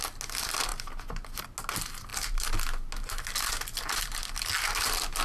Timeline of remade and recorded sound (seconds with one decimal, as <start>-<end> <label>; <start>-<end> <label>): 0.0-5.2 recorded